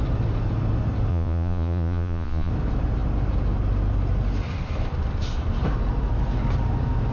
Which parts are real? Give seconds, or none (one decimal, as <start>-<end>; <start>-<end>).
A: 0.0-1.1; 2.5-7.1

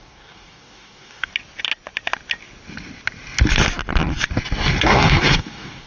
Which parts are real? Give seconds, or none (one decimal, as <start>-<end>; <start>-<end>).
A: 1.3-4.8